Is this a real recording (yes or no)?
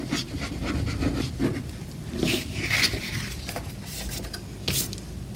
yes